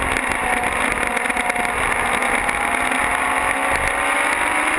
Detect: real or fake real